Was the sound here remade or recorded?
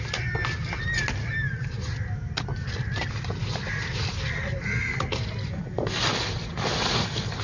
recorded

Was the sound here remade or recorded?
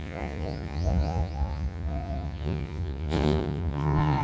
remade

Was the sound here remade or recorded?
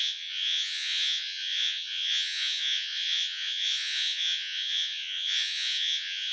remade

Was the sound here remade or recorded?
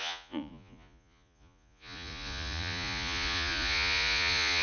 remade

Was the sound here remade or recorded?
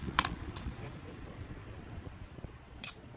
remade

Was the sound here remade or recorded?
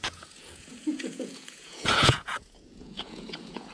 remade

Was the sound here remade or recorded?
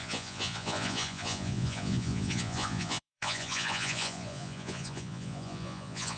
remade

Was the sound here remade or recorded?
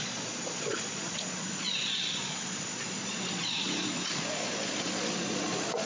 remade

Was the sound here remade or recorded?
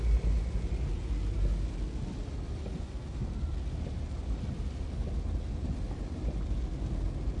recorded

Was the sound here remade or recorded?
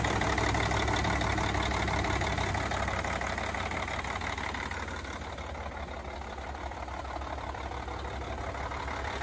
recorded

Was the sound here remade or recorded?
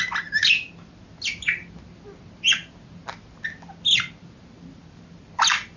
recorded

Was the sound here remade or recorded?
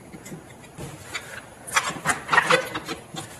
recorded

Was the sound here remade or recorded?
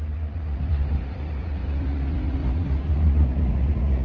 remade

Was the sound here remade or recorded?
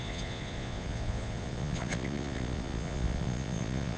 remade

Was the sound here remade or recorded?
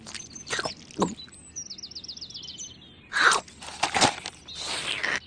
recorded